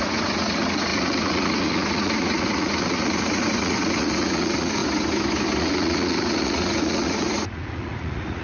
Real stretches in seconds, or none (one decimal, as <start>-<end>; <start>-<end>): 4.8-5.6